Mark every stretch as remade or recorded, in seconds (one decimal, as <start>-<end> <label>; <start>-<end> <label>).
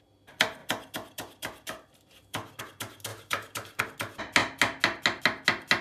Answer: 0.0-3.1 recorded; 3.1-3.8 remade; 3.8-5.8 recorded